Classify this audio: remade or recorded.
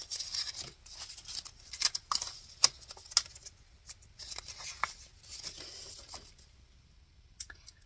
recorded